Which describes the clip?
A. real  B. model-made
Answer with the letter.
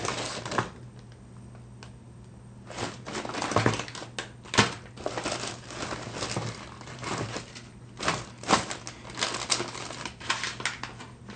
A